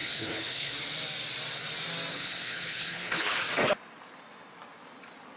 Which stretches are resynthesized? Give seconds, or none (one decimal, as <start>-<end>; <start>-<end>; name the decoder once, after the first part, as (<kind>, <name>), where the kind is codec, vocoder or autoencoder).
0.0-0.8 (codec, HILCodec); 2.1-3.4